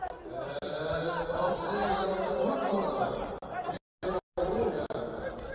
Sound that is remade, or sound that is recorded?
recorded